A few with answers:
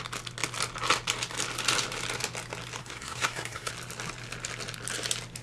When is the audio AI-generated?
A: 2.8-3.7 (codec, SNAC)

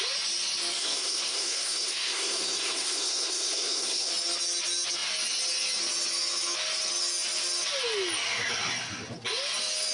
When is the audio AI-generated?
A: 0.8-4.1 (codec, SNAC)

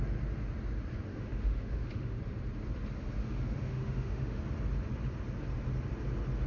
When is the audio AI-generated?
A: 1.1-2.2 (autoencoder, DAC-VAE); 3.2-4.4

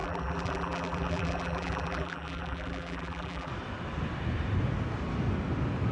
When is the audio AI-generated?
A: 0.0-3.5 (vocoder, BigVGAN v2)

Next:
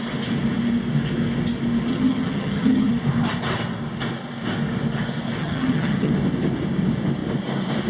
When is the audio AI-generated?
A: 1.9-2.9 (vocoder, HiFi-GAN); 5.4-6.1

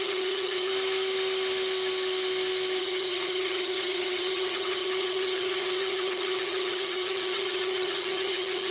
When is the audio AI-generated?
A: 0.0-0.7 (vocoder, HiFi-GAN); 2.8-8.7

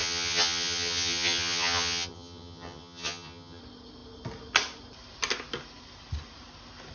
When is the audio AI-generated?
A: 0.0-3.6 (vocoder, HiFi-GAN)